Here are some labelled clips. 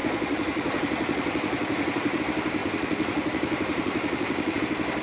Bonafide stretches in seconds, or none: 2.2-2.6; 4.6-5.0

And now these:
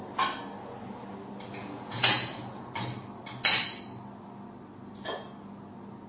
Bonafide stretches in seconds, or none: 0.0-1.6; 2.7-6.1

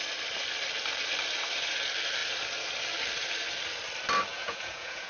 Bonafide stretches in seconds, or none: 0.0-4.3

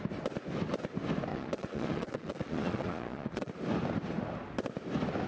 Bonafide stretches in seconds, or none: 0.0-1.3; 3.5-5.3

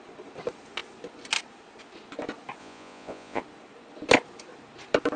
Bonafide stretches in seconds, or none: 0.0-2.6; 3.4-5.2

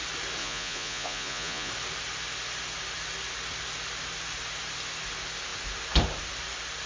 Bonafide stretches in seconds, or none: 0.0-0.4; 1.7-6.9

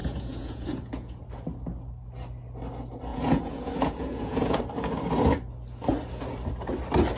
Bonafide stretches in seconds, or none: 1.2-3.1; 4.6-7.2